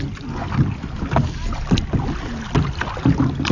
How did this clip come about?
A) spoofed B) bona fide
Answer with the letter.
B